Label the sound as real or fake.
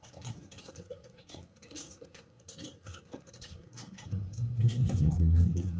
fake